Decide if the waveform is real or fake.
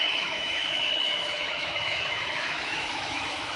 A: fake